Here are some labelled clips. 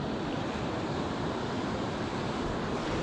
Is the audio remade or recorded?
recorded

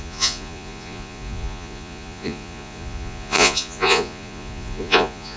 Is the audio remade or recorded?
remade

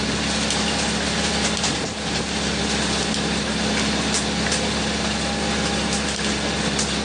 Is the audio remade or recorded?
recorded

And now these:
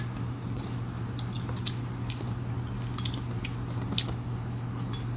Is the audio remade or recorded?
recorded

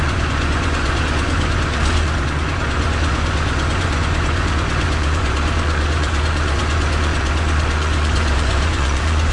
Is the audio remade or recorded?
remade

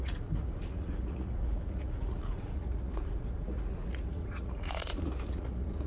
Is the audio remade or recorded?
remade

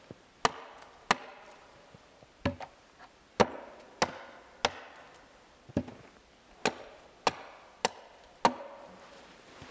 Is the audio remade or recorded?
recorded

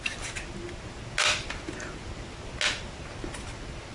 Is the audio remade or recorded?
recorded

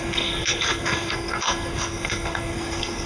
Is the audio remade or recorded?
remade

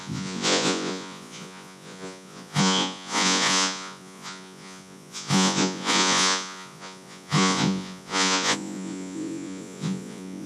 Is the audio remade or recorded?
remade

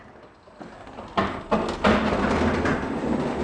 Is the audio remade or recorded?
recorded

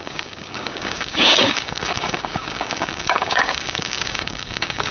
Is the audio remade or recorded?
remade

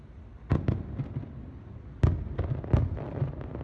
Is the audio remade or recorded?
recorded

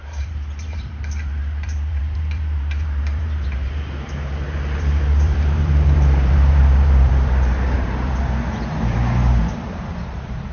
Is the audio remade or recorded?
remade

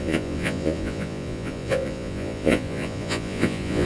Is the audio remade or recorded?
remade